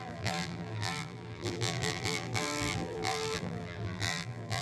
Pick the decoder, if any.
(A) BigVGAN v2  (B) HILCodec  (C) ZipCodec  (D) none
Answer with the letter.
A